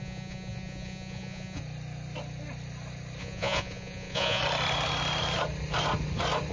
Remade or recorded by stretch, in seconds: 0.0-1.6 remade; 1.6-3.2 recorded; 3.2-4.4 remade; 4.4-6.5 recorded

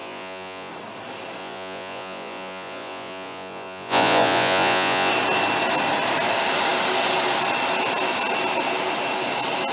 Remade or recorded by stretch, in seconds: 0.0-0.7 remade; 0.7-1.4 recorded; 1.4-5.1 remade; 5.1-9.7 recorded

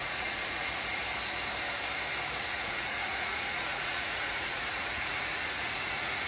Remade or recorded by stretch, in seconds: 0.0-1.0 remade; 1.0-2.4 recorded; 2.4-6.3 remade

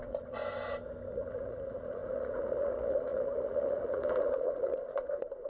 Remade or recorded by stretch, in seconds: 0.0-0.4 remade; 0.4-1.1 recorded; 1.1-5.5 remade